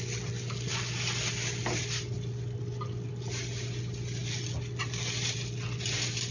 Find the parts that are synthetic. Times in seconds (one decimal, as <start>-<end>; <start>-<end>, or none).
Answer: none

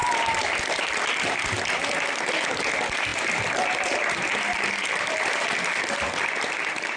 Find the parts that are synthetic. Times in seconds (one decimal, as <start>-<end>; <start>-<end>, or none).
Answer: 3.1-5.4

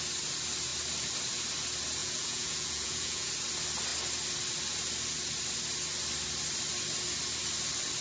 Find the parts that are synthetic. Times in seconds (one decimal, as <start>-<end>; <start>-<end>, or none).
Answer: 2.0-3.3

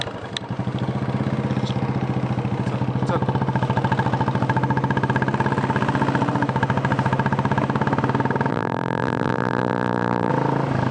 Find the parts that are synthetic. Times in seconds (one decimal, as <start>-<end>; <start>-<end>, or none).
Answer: 8.5-10.3

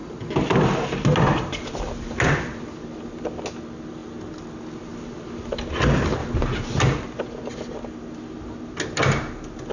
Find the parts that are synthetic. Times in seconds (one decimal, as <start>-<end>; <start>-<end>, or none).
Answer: none